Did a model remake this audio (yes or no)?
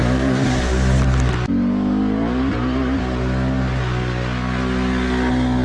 no